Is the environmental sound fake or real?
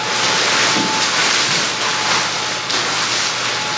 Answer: real